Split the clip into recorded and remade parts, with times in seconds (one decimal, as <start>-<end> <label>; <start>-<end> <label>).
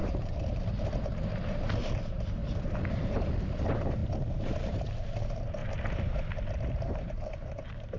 0.0-2.4 remade; 2.4-3.2 recorded; 3.2-4.0 remade; 4.0-4.6 recorded; 4.6-5.6 remade; 5.6-6.7 recorded; 6.7-8.0 remade